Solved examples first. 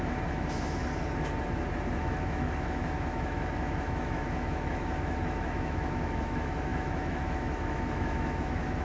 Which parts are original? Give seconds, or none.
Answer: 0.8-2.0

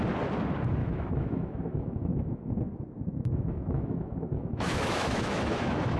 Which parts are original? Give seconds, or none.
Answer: 0.0-0.8; 2.5-3.1

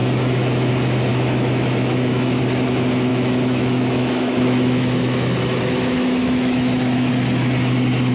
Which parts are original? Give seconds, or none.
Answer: 0.7-1.1; 2.4-3.1; 7.1-8.1

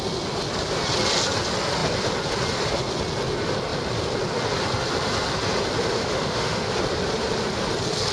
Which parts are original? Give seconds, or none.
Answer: 0.0-6.0; 6.7-8.1

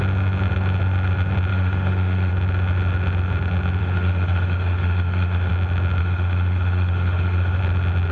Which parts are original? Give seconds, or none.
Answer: 0.0-1.5; 2.3-3.8; 5.5-6.0; 7.6-8.1

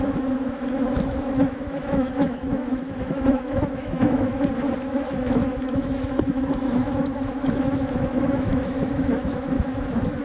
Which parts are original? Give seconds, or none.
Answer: 4.3-4.9

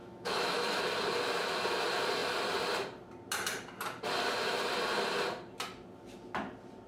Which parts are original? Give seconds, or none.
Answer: 0.8-6.9

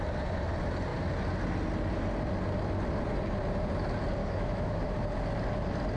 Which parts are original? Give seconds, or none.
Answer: 0.0-4.2; 4.8-6.0